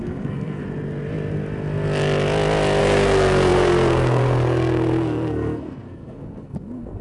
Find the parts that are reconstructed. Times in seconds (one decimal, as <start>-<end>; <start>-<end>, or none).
0.0-0.6; 2.8-7.0